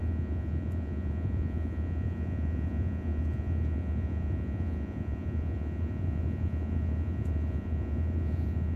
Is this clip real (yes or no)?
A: no